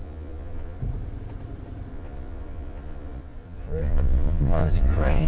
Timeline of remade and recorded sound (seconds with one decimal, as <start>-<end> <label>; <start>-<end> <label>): 0.0-0.8 remade; 0.8-1.9 recorded; 1.9-5.3 remade